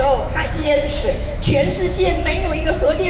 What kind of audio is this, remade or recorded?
remade